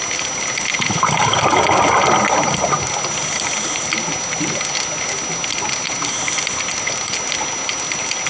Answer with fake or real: real